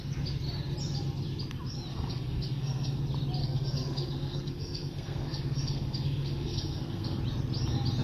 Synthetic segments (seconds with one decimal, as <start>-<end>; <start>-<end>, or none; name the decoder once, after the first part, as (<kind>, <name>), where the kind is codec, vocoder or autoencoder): 1.9-3.0 (codec, SNAC); 3.4-7.2